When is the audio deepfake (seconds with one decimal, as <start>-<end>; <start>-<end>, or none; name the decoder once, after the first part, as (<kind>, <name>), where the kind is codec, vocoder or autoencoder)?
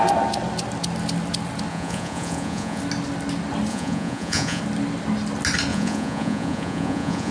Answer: 1.7-2.8 (vocoder, Vocos); 3.7-4.6; 5.7-7.3